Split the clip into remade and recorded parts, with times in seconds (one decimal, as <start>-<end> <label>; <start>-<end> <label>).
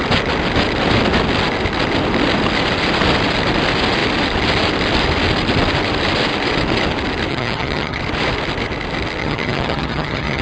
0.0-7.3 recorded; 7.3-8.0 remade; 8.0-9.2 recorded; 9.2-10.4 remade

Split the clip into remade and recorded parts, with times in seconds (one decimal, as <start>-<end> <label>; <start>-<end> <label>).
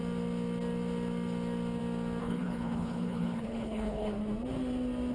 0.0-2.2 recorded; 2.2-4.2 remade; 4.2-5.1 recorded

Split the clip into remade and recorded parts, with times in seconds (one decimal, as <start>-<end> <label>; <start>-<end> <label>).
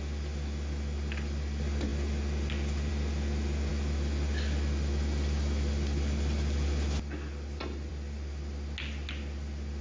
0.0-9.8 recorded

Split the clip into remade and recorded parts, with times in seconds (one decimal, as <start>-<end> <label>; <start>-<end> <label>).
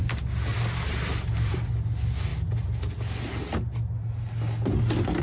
0.0-0.5 recorded; 0.5-1.7 remade; 1.7-5.2 recorded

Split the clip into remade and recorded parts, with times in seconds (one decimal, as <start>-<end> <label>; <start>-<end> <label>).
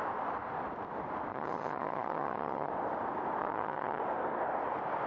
0.0-1.3 recorded; 1.3-2.7 remade; 2.7-3.4 recorded; 3.4-4.0 remade; 4.0-5.1 recorded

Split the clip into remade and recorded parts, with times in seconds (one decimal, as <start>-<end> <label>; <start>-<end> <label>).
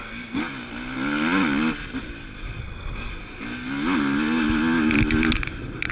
0.0-0.4 remade; 0.4-2.6 recorded; 2.6-3.1 remade; 3.1-5.9 recorded